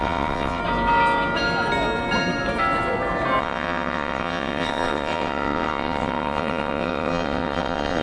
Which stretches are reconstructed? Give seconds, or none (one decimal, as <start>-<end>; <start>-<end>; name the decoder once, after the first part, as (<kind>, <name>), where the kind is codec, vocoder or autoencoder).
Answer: 0.0-0.6 (vocoder, WaveNeXt); 3.4-8.0

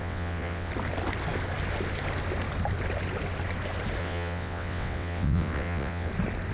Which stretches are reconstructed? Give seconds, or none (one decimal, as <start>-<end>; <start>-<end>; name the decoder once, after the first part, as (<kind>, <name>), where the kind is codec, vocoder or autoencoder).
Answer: 0.0-0.7 (vocoder, WaveNeXt); 4.0-6.1

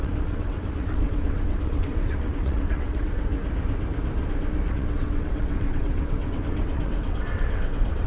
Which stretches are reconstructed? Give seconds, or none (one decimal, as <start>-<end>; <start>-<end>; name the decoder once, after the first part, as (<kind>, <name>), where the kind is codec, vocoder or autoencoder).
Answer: 0.0-3.3 (vocoder, WaveNeXt); 4.7-8.1

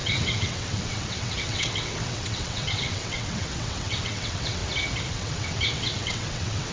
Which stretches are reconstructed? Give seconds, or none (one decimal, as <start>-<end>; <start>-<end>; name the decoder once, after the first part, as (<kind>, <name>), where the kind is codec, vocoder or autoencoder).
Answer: 0.0-4.6 (vocoder, WaveNeXt); 5.1-6.7

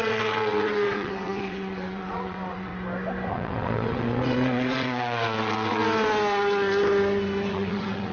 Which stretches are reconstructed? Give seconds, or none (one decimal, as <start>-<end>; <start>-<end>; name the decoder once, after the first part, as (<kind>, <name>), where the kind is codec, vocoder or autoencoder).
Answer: 0.0-2.7 (vocoder, WaveNeXt); 3.3-5.8; 7.5-8.1